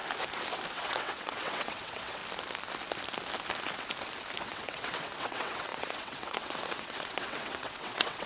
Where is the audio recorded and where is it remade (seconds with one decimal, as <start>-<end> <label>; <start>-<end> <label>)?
0.0-0.7 recorded; 0.7-2.2 remade; 2.2-4.4 recorded; 4.4-8.3 remade